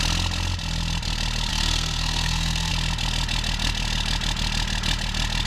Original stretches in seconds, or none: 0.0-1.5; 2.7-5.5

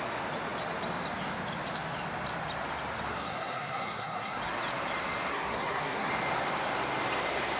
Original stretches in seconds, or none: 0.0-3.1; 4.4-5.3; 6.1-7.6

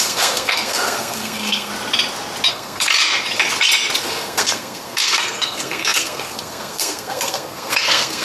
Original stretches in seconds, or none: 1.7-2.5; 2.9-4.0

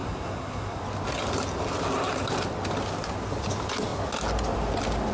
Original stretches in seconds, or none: 0.8-5.1

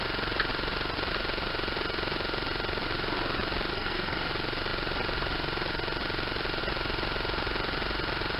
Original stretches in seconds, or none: 0.0-3.7; 4.3-8.4

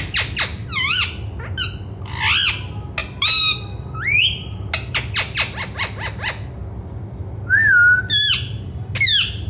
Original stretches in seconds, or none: 0.0-9.5

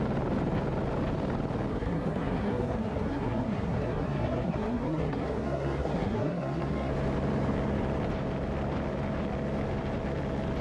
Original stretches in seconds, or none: 0.0-1.7; 6.9-10.6

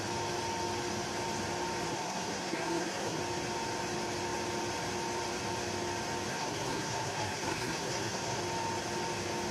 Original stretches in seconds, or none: 0.0-1.9; 3.2-6.3; 8.4-9.5